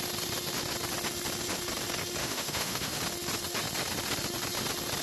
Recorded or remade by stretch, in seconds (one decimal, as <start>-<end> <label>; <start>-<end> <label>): 0.0-2.2 recorded; 2.2-3.0 remade; 3.0-5.0 recorded

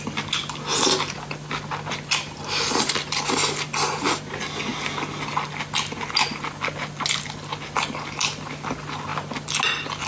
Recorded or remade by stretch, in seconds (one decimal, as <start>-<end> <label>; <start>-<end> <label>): 0.0-10.1 recorded

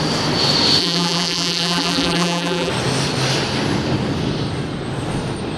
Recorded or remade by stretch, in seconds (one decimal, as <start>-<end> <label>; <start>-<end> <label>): 0.0-0.8 recorded; 0.8-2.7 remade; 2.7-5.6 recorded

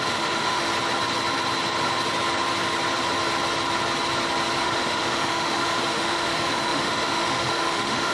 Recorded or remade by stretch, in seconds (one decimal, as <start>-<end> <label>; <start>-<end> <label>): 0.0-0.7 remade; 0.7-4.6 recorded; 4.6-8.1 remade